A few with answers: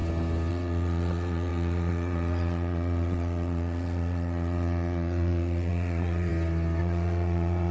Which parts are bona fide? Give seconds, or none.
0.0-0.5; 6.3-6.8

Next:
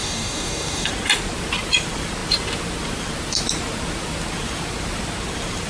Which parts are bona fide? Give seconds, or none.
0.9-5.7

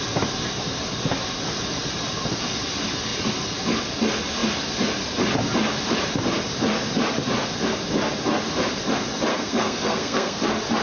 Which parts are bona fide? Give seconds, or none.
0.0-9.3; 10.4-10.8

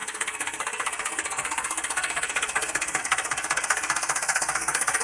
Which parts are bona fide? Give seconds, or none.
none

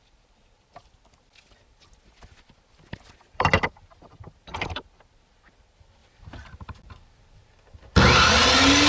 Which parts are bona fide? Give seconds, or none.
0.0-8.9

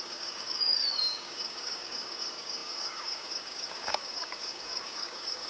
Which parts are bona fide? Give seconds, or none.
none

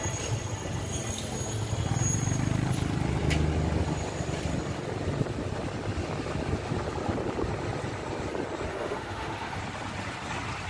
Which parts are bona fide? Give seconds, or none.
0.0-8.7; 9.6-10.7

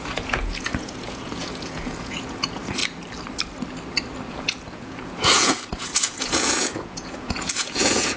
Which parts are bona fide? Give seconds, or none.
2.8-4.3